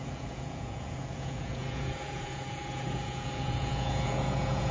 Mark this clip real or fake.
fake